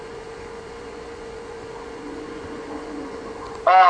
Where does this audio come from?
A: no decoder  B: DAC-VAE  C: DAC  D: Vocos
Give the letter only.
D